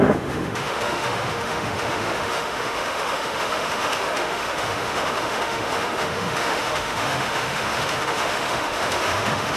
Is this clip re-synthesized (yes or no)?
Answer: yes